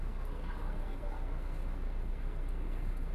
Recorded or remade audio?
remade